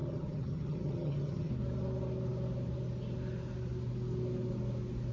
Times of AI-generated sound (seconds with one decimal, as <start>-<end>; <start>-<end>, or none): 0.0-1.5